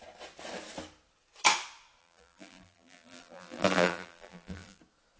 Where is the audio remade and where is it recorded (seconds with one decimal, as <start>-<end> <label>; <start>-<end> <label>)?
0.0-2.0 recorded; 2.0-4.8 remade; 4.8-5.2 recorded